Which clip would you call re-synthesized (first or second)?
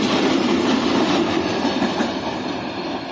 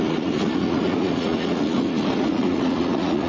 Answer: second